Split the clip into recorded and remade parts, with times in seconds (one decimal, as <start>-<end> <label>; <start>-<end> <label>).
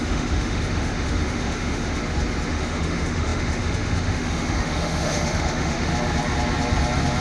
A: 0.0-2.0 remade; 2.0-2.5 recorded; 2.5-5.9 remade; 5.9-7.2 recorded